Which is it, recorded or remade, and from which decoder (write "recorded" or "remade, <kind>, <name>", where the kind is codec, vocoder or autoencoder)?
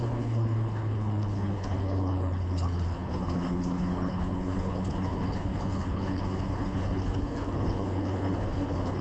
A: remade, codec, HILCodec